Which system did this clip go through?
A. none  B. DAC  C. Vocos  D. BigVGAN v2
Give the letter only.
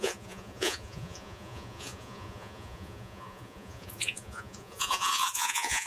C